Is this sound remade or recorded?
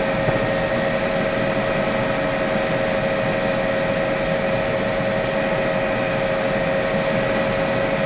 recorded